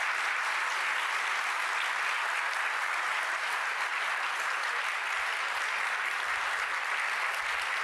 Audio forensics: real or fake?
real